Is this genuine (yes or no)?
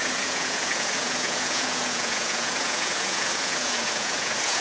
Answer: no